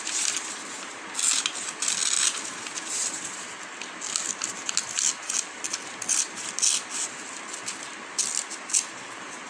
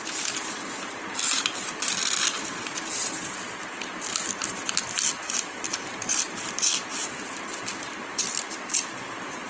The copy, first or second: second